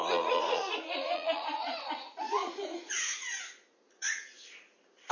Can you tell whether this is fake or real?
fake